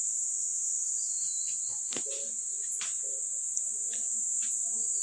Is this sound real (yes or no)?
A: yes